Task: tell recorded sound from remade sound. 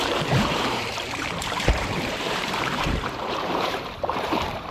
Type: remade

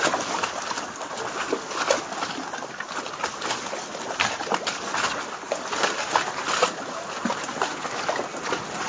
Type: recorded